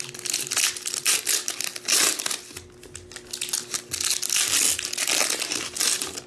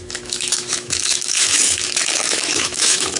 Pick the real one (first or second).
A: first